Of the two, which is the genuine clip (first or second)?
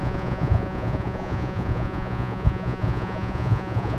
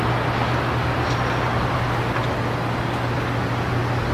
second